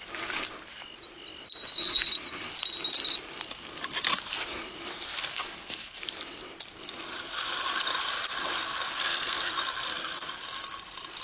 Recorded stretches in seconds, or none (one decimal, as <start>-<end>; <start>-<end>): 0.0-5.3; 6.0-8.9; 9.5-11.2